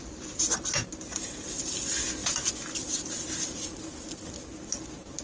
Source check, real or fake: real